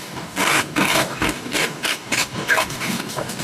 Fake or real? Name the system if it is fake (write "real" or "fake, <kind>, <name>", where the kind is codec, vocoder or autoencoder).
fake, codec, DAC